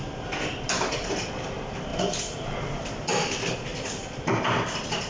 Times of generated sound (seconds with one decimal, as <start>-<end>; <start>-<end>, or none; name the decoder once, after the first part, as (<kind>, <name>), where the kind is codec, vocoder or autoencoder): 1.9-3.3 (vocoder, BigVGAN v2); 3.7-4.6